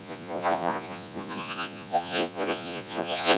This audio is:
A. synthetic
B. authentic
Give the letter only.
A